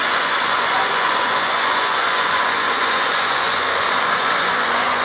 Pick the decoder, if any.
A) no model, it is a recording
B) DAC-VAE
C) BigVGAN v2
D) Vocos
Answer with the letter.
D